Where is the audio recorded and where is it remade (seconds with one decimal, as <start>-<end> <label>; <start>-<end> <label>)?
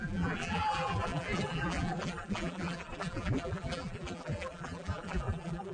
0.0-5.7 remade